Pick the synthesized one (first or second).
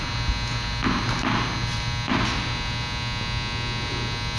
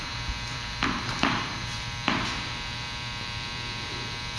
second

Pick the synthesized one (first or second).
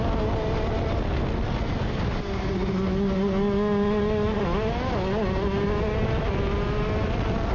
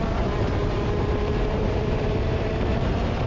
second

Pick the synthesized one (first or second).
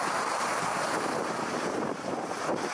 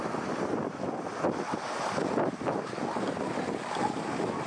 first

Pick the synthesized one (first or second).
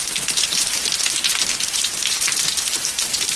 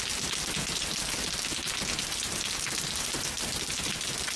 first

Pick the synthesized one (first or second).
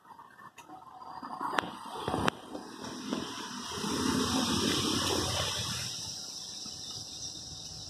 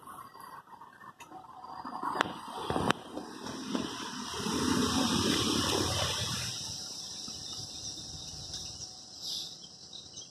second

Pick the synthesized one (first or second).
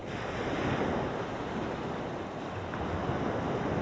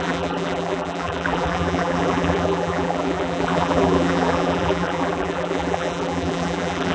second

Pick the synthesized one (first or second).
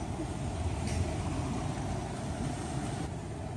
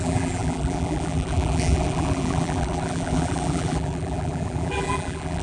second